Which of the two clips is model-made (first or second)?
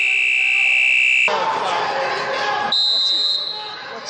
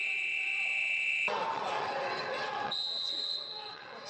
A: second